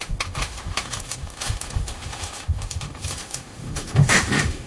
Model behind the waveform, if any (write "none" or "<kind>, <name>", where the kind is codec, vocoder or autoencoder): autoencoder, DAC-VAE